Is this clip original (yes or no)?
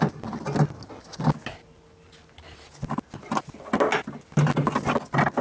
yes